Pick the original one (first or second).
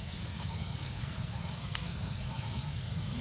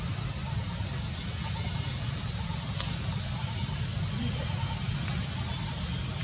second